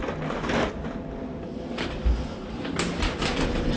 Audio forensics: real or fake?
real